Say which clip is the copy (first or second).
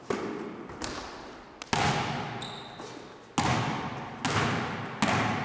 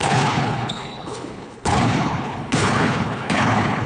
second